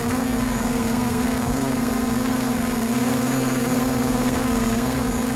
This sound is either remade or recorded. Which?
remade